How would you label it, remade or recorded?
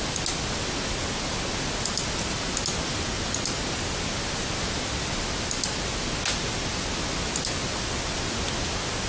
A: recorded